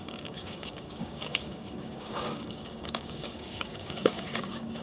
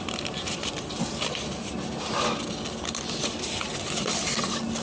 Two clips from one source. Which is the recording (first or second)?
second